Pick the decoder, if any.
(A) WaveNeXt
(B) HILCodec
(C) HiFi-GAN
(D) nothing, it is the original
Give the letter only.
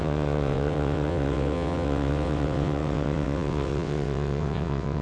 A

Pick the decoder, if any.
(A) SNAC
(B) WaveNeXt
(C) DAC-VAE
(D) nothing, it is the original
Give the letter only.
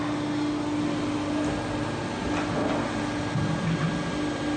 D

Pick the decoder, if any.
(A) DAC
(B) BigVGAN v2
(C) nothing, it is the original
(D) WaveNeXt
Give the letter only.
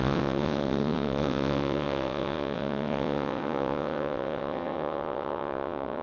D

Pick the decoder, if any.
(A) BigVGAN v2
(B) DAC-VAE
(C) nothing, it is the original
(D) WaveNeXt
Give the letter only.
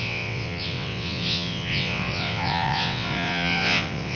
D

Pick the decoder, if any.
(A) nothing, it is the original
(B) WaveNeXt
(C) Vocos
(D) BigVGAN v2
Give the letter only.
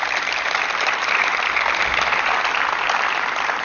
A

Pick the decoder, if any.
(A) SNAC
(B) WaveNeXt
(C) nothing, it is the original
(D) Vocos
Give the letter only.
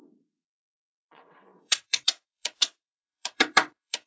B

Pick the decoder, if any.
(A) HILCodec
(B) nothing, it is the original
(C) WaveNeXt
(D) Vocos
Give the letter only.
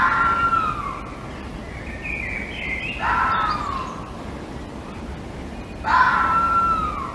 B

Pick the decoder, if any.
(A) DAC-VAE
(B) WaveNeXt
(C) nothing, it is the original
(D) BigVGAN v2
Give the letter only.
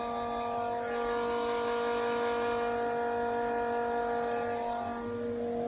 C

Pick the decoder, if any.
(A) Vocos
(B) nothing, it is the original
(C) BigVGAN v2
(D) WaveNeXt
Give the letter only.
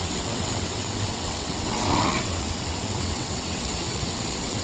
D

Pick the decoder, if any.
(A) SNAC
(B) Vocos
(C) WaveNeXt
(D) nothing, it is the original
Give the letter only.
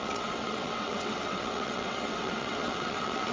C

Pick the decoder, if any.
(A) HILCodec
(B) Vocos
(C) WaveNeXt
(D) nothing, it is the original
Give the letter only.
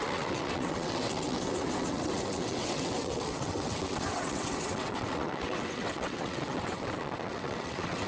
C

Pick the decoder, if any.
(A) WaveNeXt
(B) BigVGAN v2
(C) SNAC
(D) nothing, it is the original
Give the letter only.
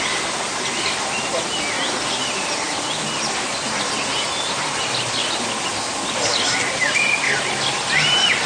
D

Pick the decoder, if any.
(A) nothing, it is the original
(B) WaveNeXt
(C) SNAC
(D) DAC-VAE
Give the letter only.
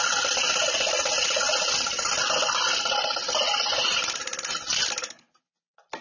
A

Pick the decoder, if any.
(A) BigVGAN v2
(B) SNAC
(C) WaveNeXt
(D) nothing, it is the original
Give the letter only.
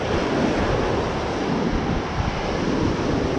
D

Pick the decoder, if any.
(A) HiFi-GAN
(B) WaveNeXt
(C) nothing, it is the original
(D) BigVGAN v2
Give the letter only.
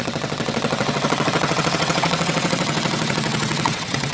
B